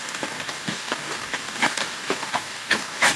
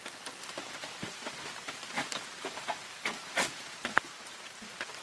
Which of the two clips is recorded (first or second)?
second